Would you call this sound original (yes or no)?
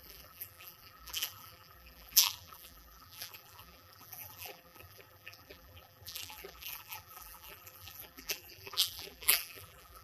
no